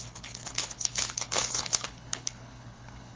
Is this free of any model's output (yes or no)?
no